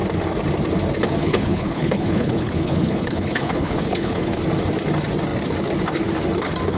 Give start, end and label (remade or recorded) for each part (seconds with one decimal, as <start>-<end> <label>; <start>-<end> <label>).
0.0-1.2 recorded; 1.2-4.4 remade; 4.4-6.8 recorded